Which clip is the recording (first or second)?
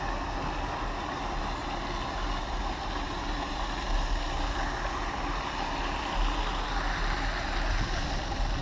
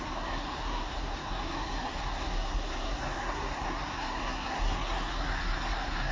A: first